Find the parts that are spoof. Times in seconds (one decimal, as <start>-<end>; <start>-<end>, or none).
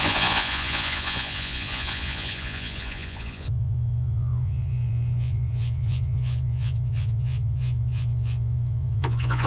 0.0-9.5